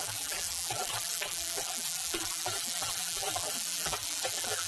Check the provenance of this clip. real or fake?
fake